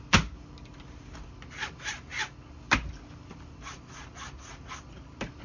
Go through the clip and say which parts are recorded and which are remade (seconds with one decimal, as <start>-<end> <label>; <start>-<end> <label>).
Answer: 0.0-5.4 recorded